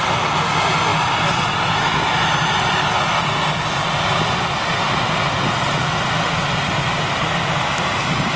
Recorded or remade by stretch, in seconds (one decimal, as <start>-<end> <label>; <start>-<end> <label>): 0.0-8.4 recorded